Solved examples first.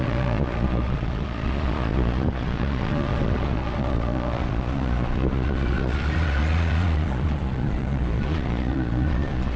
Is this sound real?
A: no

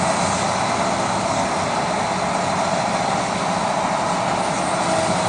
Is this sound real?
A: yes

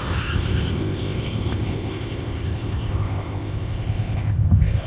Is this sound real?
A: no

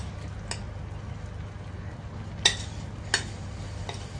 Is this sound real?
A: yes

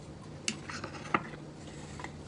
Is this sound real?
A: yes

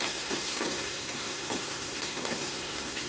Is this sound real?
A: no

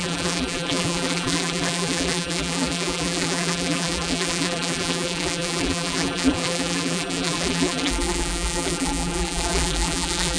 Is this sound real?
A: no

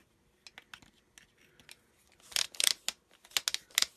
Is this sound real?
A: yes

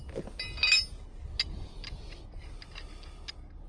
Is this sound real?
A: yes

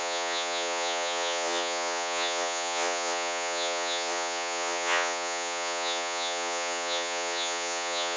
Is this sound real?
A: no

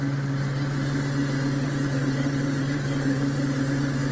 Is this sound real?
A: yes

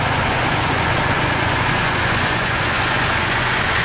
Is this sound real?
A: no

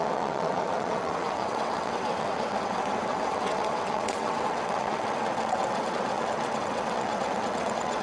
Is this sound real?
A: no